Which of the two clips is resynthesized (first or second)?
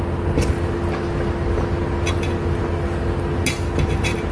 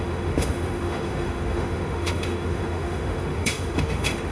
second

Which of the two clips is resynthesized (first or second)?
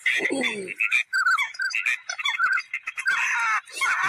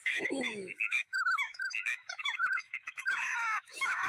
second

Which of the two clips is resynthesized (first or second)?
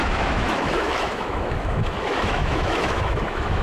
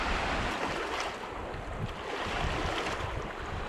first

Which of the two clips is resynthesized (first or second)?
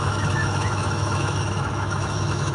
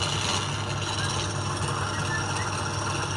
first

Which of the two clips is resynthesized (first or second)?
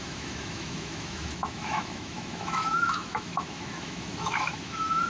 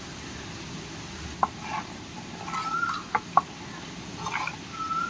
first